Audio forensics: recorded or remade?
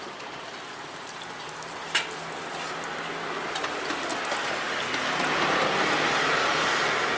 recorded